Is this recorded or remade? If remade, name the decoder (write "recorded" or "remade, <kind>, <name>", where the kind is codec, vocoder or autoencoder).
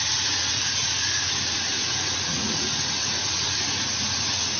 remade, vocoder, Vocos